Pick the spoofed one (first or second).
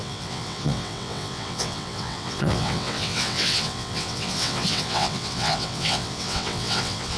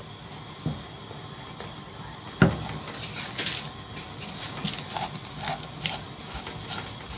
first